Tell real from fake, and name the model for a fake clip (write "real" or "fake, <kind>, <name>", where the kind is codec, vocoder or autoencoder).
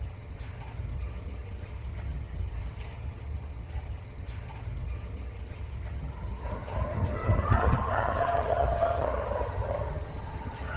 fake, vocoder, HiFi-GAN